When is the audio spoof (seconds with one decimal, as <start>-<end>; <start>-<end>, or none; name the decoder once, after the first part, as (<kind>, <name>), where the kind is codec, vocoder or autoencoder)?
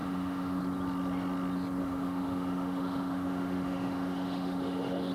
0.0-0.6 (autoencoder, DAC-VAE); 1.8-5.1